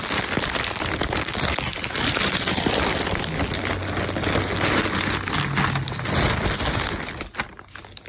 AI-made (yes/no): no